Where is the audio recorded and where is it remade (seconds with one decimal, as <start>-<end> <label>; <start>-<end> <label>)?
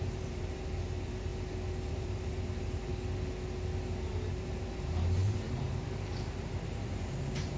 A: 0.0-1.3 remade; 1.3-1.9 recorded; 1.9-2.9 remade; 2.9-4.3 recorded; 4.3-7.6 remade